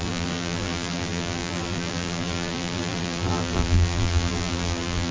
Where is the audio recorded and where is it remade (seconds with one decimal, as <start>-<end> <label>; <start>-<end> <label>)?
0.0-5.1 remade